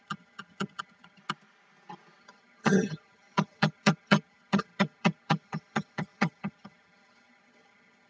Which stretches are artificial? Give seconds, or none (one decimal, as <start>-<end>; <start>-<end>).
0.0-1.2; 2.2-8.1